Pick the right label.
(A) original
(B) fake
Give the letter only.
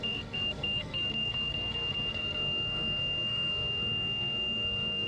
B